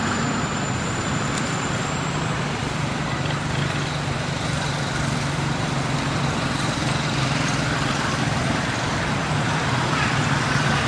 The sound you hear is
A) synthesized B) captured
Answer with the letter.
A